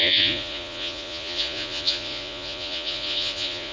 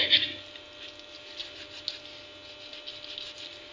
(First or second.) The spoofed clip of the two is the first